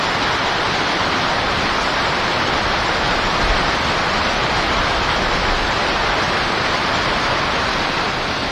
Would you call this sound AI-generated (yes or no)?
yes